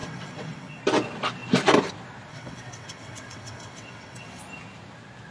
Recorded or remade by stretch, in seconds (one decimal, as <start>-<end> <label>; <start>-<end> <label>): 0.0-0.8 remade; 0.8-2.3 recorded; 2.3-4.4 remade; 4.4-5.3 recorded